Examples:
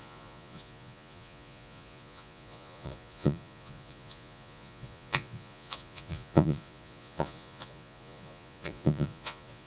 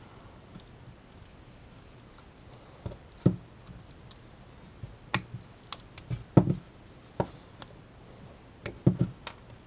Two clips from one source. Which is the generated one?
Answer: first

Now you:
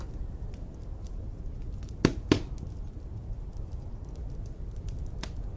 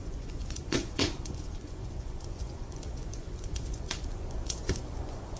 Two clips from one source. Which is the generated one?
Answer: second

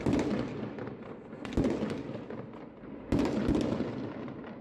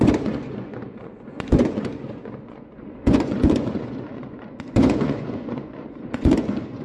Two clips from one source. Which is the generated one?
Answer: second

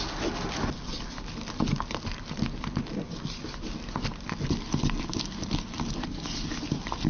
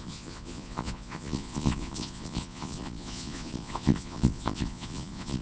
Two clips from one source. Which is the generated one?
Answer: second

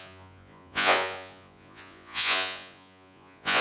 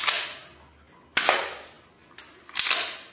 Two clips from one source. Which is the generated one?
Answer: first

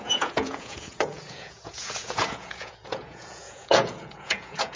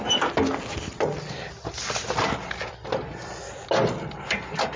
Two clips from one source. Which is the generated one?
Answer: first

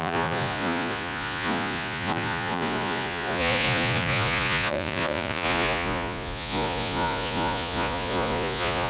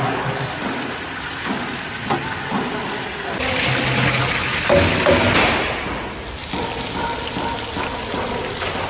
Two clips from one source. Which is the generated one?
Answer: first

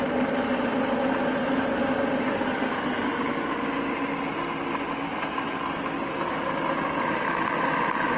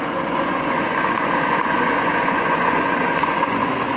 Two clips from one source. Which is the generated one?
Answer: second